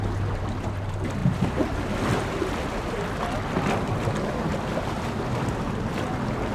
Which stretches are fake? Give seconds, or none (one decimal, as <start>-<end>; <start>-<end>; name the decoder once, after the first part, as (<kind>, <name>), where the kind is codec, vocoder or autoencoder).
4.5-6.1 (vocoder, BigVGAN v2)

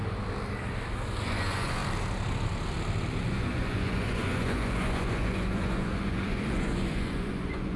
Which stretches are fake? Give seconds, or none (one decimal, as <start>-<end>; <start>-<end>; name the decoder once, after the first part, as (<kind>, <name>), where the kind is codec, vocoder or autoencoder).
1.2-1.8 (vocoder, Vocos); 3.2-7.8

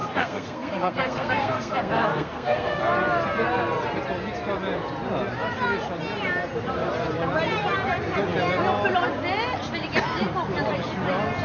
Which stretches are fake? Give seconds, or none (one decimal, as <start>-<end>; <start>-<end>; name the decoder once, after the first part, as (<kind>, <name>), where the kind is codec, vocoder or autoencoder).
0.0-2.8 (codec, SNAC)

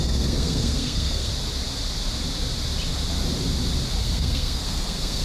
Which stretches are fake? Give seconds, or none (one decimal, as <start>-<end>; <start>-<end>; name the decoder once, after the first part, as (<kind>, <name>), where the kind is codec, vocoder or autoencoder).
0.0-1.3 (codec, SNAC); 4.0-5.2

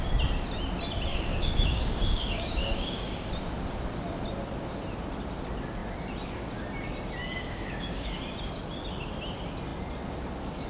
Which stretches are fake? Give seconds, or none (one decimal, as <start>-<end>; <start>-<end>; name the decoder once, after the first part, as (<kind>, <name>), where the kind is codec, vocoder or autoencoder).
1.1-3.3 (codec, DAC); 7.2-8.2

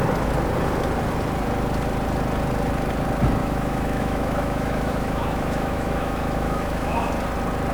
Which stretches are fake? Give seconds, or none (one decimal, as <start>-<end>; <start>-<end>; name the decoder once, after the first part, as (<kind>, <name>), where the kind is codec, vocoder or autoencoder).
3.4-7.1 (autoencoder, DAC-VAE)

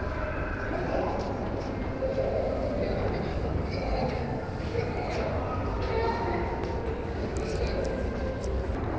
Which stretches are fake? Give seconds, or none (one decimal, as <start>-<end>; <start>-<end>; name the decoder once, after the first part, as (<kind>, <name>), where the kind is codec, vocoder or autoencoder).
3.3-5.1 (codec, DAC)